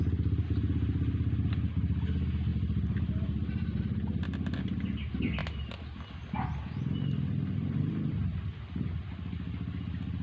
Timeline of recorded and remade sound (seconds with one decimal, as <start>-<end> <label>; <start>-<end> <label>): 0.0-10.2 recorded